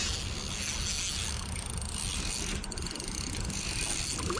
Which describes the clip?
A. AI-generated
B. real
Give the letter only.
B